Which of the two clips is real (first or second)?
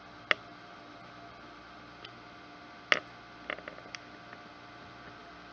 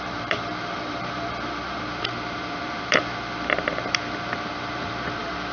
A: first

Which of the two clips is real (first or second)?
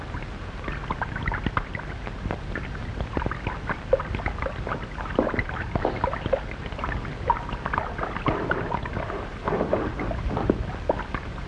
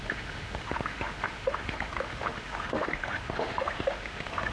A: first